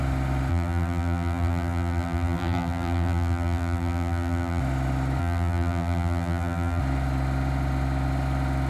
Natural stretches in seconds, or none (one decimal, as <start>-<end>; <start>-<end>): 0.0-0.5; 4.6-5.2; 6.8-8.7